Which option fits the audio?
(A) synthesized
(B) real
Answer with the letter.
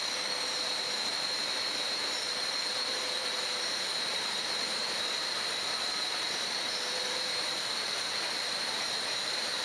A